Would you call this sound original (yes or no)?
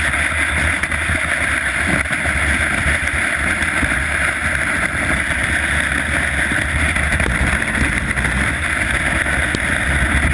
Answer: yes